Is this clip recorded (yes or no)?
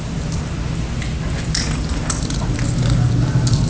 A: yes